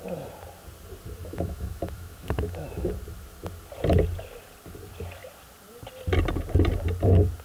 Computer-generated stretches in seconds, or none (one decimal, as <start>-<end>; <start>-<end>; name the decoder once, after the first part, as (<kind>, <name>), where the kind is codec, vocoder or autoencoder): 1.2-2.9 (autoencoder, DAC-VAE)